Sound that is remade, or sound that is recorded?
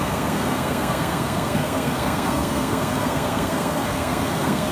remade